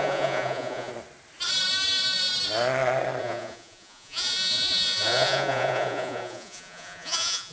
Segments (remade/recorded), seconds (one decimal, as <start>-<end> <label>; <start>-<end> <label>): 0.0-0.9 remade; 0.9-3.2 recorded; 3.2-7.5 remade